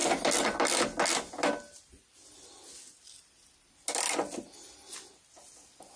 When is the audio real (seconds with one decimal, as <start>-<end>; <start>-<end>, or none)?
0.0-6.0